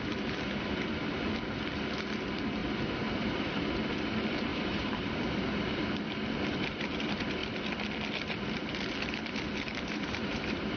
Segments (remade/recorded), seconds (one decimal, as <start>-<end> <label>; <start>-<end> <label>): 0.0-4.5 recorded; 4.5-5.8 remade; 5.8-9.7 recorded; 9.7-10.8 remade